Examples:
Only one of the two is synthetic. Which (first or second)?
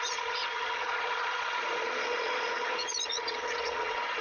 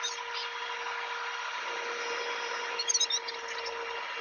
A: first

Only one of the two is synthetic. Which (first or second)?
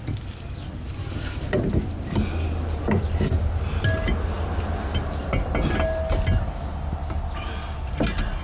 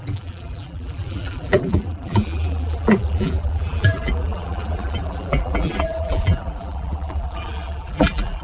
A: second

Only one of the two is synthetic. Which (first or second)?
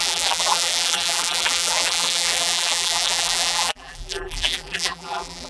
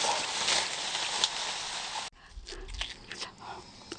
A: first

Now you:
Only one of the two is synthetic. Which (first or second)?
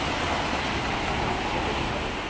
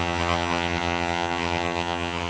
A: second